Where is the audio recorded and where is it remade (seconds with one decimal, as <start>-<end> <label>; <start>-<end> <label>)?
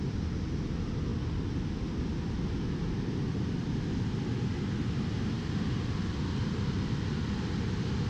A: 0.0-8.1 recorded